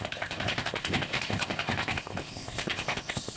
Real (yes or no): no